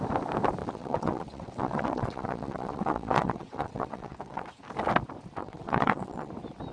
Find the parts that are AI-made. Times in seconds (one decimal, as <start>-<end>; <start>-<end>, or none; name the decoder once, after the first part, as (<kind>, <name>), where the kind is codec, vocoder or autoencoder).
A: 0.6-4.6 (vocoder, WaveNeXt); 5.4-6.3